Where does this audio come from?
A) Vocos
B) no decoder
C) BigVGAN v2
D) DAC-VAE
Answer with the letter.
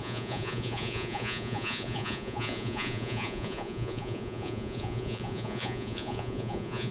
A